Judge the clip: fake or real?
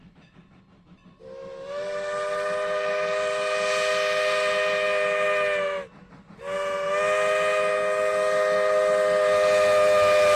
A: real